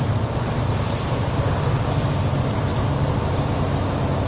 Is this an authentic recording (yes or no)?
yes